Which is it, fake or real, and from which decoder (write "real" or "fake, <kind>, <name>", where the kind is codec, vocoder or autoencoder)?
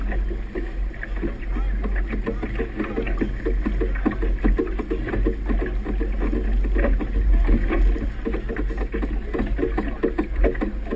real